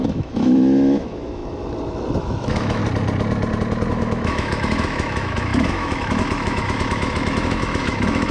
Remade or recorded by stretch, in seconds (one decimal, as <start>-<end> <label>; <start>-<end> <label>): 0.0-1.4 remade; 1.4-2.2 recorded; 2.2-2.8 remade; 2.8-3.9 recorded; 3.9-8.3 remade